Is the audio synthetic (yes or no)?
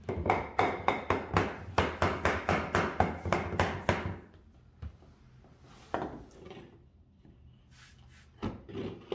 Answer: no